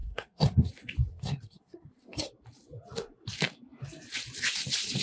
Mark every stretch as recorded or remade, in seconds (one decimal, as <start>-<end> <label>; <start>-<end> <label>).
0.0-0.7 remade; 0.7-1.1 recorded; 1.1-2.3 remade; 2.3-5.0 recorded